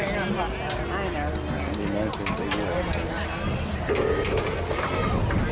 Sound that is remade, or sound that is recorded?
recorded